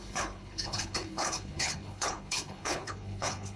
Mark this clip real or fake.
fake